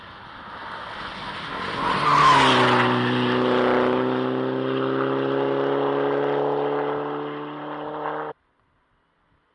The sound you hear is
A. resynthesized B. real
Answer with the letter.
B